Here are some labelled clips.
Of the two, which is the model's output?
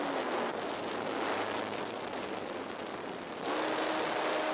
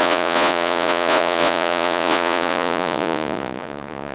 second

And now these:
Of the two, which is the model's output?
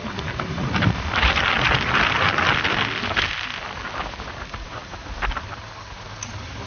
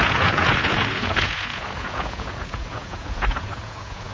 second